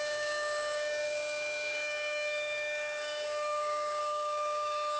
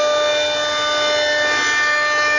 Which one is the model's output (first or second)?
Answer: first